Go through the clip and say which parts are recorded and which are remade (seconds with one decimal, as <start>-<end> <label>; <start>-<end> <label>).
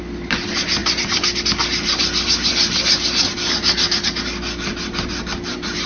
0.0-5.9 recorded